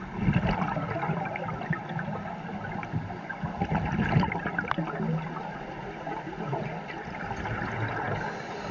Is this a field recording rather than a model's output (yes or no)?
yes